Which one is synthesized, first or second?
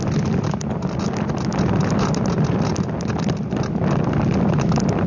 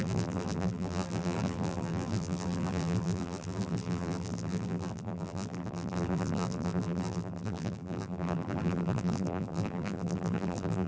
second